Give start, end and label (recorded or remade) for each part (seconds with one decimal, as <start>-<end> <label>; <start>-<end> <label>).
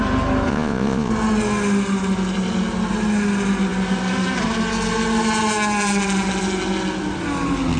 0.0-0.5 recorded; 0.5-1.1 remade; 1.1-7.8 recorded